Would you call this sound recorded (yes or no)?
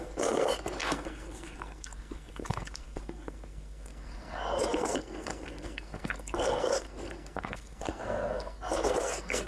no